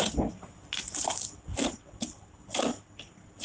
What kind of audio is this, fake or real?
real